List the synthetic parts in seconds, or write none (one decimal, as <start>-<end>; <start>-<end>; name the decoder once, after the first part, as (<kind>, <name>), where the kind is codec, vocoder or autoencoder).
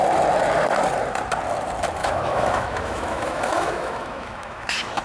2.0-5.0 (autoencoder, DAC-VAE)